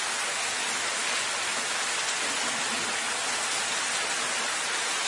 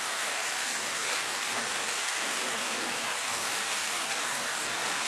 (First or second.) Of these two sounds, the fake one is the second